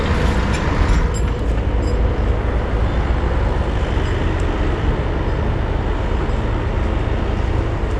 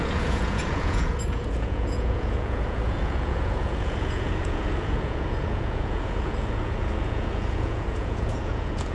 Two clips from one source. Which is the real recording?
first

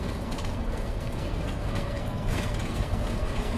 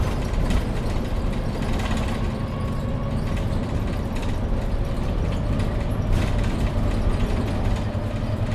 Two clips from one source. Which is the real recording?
second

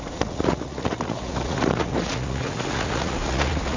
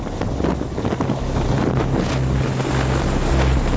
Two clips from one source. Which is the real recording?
second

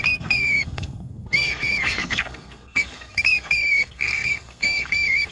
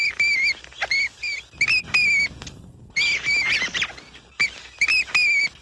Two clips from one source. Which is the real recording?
second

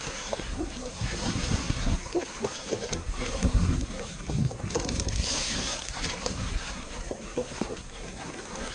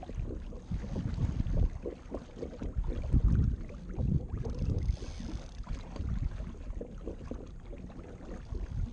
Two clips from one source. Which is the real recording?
second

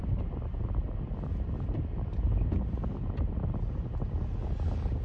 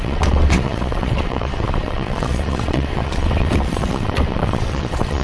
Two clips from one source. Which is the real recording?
first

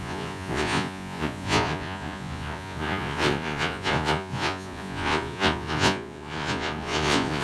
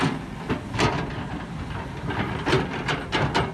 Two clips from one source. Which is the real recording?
second